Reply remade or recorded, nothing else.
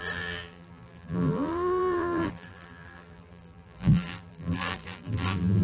remade